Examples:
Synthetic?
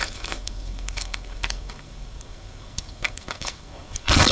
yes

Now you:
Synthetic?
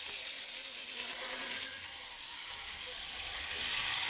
no